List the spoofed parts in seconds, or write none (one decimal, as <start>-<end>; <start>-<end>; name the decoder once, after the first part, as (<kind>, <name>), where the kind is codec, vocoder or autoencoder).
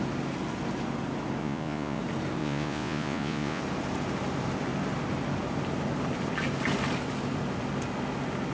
1.4-2.0 (vocoder, Vocos); 2.4-3.6